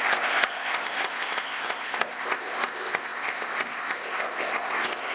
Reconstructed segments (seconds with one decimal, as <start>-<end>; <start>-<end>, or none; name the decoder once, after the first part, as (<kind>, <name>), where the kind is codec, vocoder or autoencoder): 0.0-5.1 (codec, ZipCodec)